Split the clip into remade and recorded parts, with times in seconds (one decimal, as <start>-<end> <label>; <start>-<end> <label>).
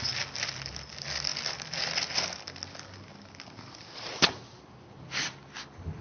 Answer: 0.0-6.0 recorded